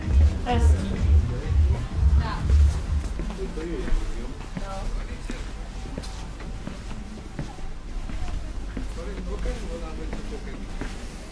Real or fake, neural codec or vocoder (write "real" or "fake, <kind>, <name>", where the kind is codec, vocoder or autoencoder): real